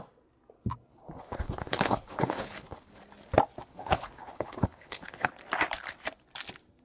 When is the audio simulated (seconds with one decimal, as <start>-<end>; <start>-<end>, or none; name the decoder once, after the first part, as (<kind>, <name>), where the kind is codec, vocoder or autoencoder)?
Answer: 0.9-3.0 (codec, HILCodec); 3.7-5.3